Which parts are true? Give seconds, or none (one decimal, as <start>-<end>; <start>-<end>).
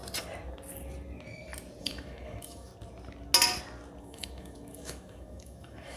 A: 0.0-1.8; 2.7-4.0